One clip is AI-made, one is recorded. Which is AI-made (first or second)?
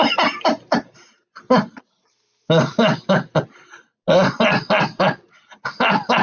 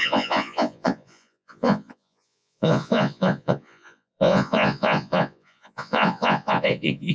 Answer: second